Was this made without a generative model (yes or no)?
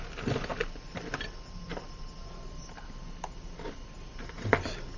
yes